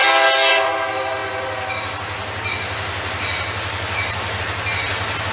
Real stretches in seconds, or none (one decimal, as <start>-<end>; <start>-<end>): 0.0-5.3